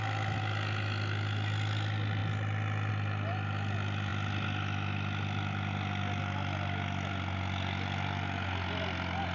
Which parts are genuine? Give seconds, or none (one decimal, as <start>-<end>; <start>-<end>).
0.0-9.3